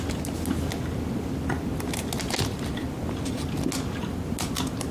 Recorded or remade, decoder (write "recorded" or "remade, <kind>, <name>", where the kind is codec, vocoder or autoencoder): recorded